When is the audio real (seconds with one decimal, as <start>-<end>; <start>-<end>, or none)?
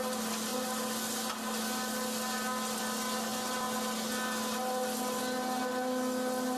0.0-6.6